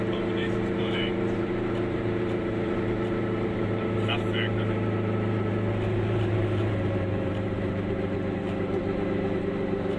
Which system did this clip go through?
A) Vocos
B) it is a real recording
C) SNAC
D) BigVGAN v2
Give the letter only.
D